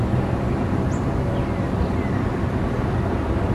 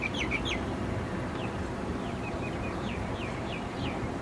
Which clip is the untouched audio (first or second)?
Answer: first